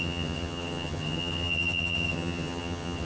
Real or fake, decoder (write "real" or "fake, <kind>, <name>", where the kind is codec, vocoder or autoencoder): fake, vocoder, HiFi-GAN